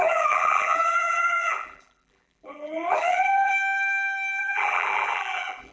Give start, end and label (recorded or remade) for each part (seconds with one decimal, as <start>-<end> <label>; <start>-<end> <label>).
0.0-3.5 remade; 3.5-4.4 recorded; 4.4-5.7 remade